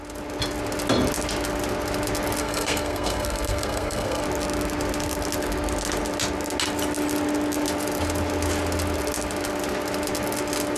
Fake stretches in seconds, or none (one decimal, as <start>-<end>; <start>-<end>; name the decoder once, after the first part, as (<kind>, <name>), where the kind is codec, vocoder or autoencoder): 2.4-4.2 (codec, SNAC)